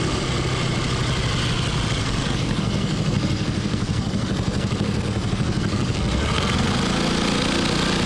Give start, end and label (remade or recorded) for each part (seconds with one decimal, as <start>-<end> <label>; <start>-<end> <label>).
0.0-2.0 recorded; 2.0-6.7 remade; 6.7-8.1 recorded